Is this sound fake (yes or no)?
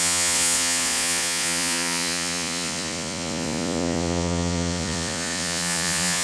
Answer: yes